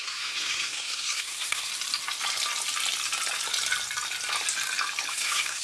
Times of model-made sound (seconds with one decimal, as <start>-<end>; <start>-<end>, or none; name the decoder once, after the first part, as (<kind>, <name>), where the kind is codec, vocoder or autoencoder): 0.0-1.7 (codec, SNAC); 5.1-5.6